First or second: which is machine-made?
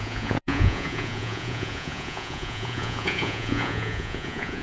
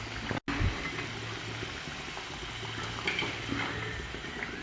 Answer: first